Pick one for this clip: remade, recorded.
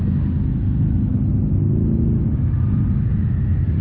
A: recorded